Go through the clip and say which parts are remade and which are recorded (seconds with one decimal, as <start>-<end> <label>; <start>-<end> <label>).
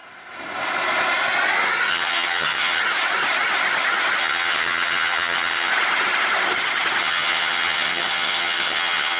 0.0-1.9 recorded; 1.9-2.8 remade; 2.8-4.2 recorded; 4.2-5.7 remade; 5.7-7.0 recorded; 7.0-9.2 remade